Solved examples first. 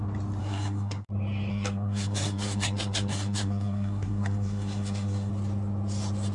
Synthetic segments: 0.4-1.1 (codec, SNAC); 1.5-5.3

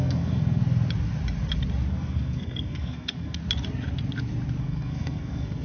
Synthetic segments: 0.0-0.6 (codec, SNAC); 1.9-3.4; 4.6-5.6

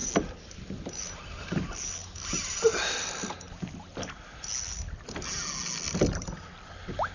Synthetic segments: none

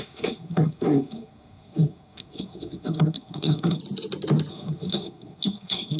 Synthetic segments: 0.0-3.8 (codec, SNAC); 4.5-6.0

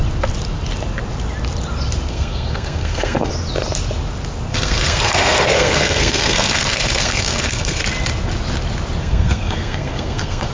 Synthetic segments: 2.1-3.3 (codec, SNAC); 4.5-7.8; 9.0-10.5

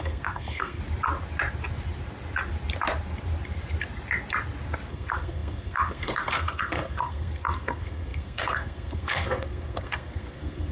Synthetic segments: 0.0-0.8 (codec, SNAC); 4.9-10.7